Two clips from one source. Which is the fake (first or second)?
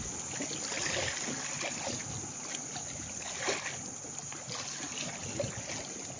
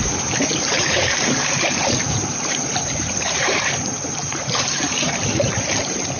second